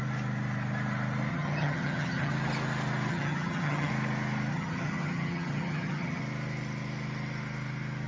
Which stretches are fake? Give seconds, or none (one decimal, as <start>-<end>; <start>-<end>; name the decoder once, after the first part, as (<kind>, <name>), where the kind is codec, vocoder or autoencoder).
1.3-2.3 (vocoder, HiFi-GAN); 3.1-3.9; 4.5-6.2